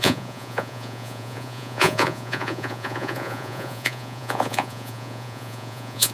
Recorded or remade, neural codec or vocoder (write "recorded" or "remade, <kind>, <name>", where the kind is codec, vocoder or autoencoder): remade, vocoder, Vocos